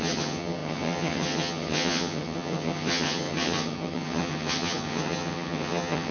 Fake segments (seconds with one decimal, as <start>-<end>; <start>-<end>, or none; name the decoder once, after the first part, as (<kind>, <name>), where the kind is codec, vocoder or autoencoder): 0.0-6.1 (vocoder, HiFi-GAN)